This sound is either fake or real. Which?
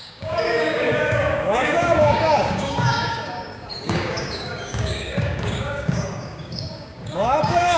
fake